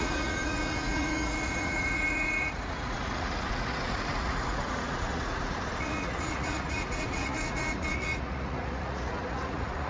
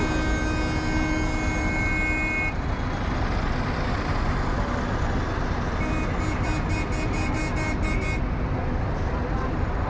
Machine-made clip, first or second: first